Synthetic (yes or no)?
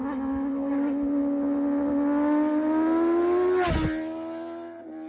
no